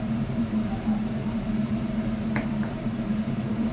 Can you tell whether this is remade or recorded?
remade